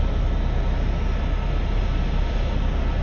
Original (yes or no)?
yes